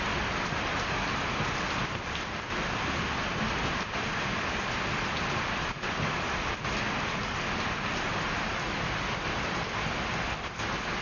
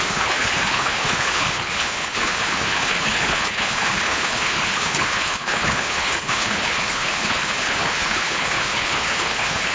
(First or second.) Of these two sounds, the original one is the first